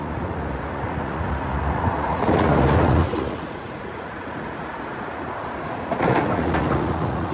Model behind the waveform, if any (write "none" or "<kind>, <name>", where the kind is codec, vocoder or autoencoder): vocoder, Vocos